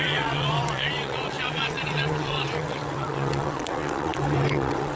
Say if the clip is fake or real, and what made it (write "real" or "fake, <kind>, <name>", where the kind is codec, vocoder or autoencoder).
fake, vocoder, WaveNeXt